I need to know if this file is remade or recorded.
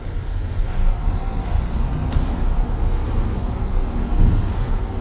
remade